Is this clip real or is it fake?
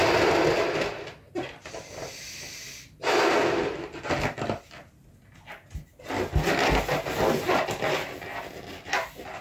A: real